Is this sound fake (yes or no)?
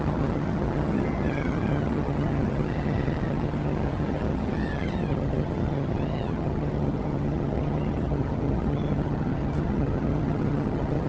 yes